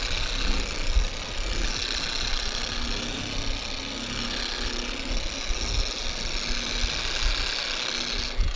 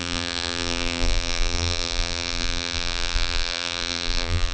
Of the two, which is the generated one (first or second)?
second